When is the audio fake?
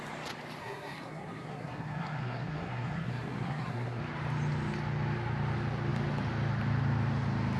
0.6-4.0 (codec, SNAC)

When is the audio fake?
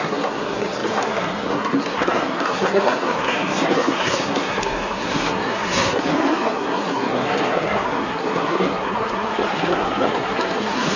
0.0-11.0 (codec, SNAC)